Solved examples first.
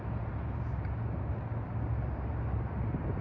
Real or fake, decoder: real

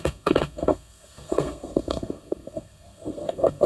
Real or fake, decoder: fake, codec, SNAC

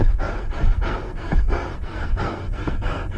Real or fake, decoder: fake, codec, SNAC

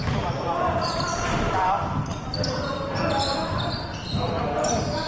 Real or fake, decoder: real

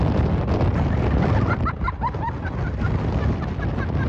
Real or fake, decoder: real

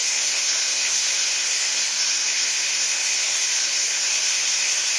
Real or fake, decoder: fake, codec, SNAC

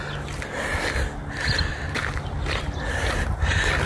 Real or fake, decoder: real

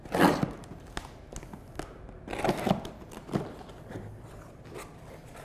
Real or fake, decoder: real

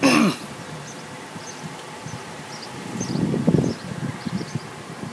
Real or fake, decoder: real